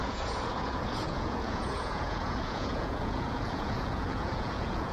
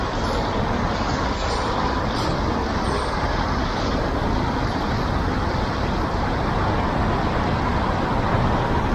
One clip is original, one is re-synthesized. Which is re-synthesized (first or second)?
first